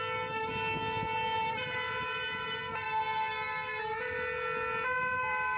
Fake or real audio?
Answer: real